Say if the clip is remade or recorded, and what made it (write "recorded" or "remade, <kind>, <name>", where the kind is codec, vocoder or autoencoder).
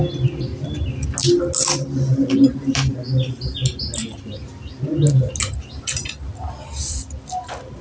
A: recorded